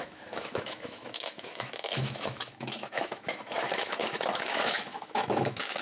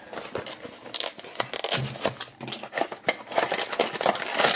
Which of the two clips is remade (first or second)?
first